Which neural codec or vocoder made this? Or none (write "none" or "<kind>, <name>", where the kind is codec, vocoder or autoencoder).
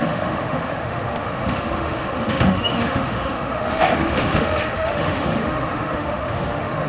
autoencoder, DAC-VAE